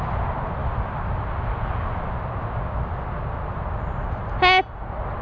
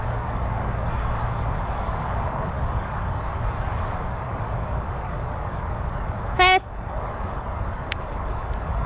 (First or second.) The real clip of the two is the first